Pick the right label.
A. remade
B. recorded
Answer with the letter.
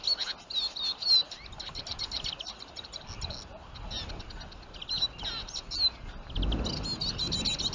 B